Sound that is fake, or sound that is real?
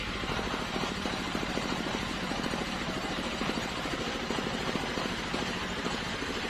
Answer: fake